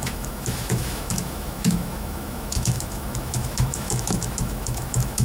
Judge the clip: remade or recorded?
remade